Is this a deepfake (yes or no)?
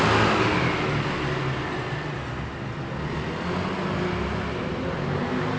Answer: no